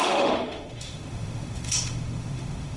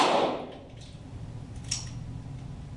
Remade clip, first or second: first